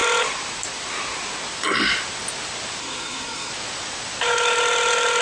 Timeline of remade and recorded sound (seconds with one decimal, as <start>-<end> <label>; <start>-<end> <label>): 0.0-2.8 recorded; 2.8-3.5 remade; 3.5-5.2 recorded